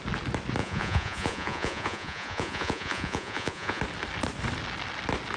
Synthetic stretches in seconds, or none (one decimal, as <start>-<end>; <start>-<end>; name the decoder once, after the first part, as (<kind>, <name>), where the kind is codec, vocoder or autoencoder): 0.6-3.8 (vocoder, Vocos)